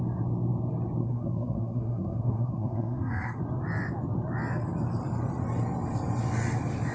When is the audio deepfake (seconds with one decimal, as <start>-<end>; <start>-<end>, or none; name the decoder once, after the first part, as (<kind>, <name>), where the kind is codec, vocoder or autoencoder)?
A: 1.0-3.4 (codec, SNAC)